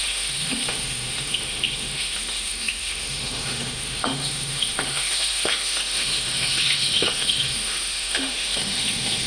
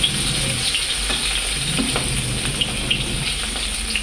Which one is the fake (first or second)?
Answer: first